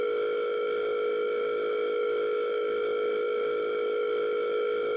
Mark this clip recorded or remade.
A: remade